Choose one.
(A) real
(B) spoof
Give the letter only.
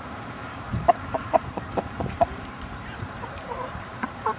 B